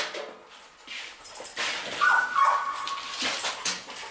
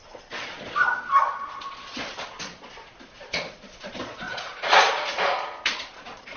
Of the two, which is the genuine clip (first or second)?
first